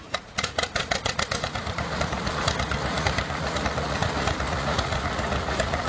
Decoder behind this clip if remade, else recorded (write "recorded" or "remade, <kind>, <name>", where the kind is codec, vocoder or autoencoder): remade, vocoder, Vocos